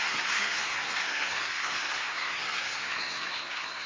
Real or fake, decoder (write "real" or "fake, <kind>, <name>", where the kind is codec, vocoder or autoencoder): fake, codec, SNAC